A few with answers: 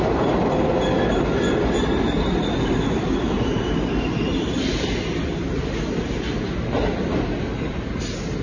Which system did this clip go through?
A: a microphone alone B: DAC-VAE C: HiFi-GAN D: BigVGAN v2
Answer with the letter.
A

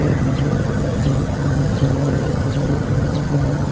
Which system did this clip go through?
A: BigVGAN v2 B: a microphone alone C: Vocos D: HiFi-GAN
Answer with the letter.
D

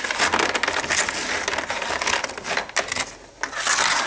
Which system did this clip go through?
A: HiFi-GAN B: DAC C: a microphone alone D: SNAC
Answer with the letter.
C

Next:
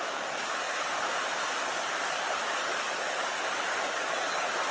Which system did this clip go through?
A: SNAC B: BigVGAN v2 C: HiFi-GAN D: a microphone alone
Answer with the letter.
D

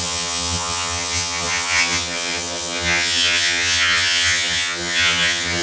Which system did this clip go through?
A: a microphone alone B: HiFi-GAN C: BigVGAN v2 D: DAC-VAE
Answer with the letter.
B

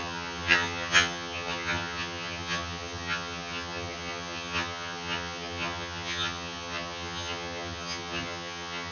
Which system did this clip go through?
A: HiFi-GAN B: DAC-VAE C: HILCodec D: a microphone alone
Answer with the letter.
A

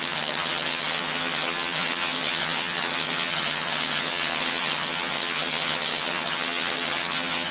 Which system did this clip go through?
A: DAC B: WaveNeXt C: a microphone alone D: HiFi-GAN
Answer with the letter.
D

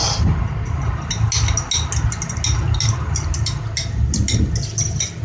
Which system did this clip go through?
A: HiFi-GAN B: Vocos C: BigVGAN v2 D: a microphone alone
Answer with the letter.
D